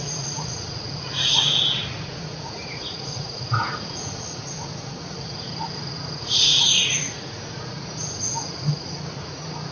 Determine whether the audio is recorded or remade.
remade